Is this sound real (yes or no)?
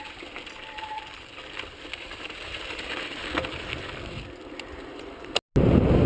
yes